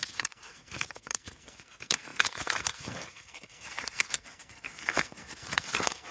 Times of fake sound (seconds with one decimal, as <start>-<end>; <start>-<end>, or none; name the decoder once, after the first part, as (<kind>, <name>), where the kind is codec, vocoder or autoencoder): 0.0-6.1 (codec, SNAC)